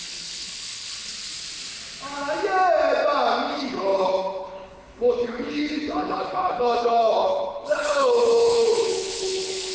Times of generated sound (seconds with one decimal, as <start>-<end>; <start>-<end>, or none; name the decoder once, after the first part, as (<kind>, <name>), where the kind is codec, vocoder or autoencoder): 0.0-1.1 (codec, HILCodec); 3.5-9.7

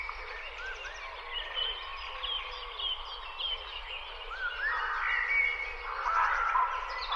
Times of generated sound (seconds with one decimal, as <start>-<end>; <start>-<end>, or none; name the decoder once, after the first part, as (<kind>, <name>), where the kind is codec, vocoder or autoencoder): none